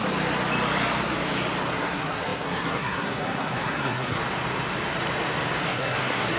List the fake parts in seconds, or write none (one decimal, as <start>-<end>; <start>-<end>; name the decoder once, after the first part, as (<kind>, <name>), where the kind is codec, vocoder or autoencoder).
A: 1.7-4.2 (codec, SNAC); 5.6-6.4